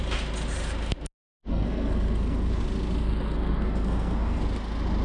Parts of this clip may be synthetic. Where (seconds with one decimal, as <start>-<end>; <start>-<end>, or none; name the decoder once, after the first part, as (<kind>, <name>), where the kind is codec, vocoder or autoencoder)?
1.5-2.5 (codec, SNAC); 3.0-4.4